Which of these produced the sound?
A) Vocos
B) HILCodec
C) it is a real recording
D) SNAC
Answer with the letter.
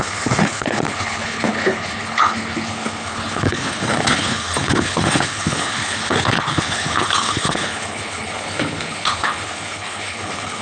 B